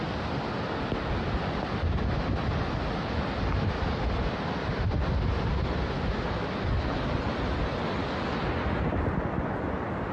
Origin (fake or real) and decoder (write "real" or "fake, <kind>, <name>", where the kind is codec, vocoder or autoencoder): real